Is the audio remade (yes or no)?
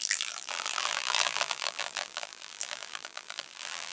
yes